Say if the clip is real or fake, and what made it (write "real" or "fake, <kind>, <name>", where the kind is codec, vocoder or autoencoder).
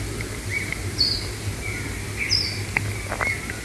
real